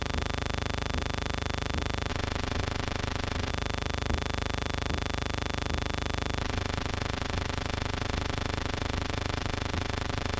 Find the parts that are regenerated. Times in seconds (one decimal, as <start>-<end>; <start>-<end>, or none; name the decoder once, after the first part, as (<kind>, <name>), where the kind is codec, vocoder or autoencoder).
2.1-3.5 (vocoder, WaveNeXt); 6.4-10.4